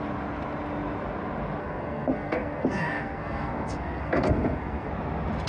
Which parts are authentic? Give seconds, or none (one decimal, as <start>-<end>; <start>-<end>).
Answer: 0.0-1.6; 4.9-5.5